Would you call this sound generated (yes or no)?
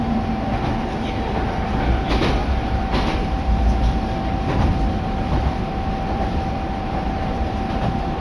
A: yes